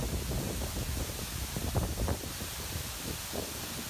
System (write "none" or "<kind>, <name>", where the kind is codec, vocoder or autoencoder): vocoder, BigVGAN v2